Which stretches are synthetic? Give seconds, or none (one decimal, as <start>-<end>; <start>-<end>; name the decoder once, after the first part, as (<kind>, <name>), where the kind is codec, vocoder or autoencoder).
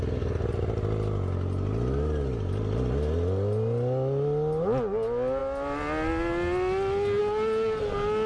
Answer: none